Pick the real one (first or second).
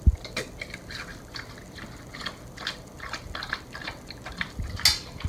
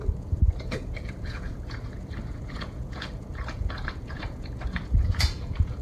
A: first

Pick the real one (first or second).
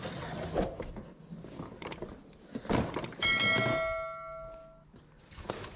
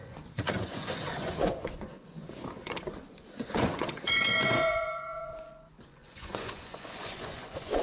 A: first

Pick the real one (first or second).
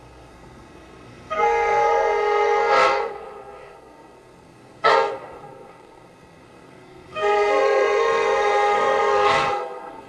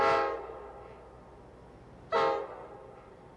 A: second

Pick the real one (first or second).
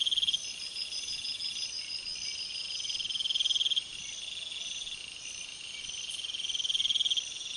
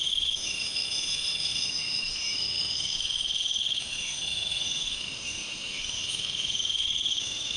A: first